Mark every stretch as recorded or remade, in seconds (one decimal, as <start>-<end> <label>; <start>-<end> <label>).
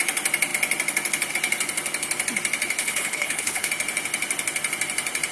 0.0-2.8 recorded; 2.8-3.7 remade; 3.7-5.3 recorded